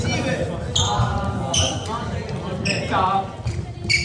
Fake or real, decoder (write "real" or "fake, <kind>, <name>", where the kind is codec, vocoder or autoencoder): real